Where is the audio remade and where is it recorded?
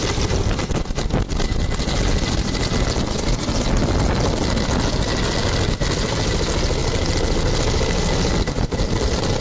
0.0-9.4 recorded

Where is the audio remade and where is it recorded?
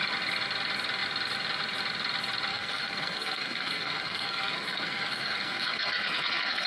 0.0-2.5 recorded; 2.5-6.7 remade